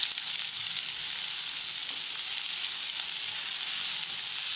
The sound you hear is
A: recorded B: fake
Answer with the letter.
A